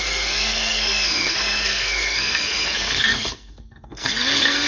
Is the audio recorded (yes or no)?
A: no